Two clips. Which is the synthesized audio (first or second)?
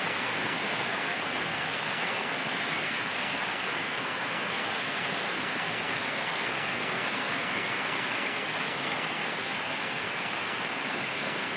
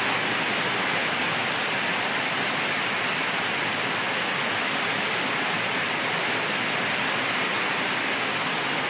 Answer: first